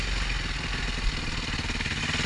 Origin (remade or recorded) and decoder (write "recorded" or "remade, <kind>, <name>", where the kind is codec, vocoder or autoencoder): recorded